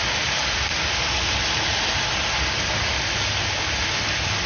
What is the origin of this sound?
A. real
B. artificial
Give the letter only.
A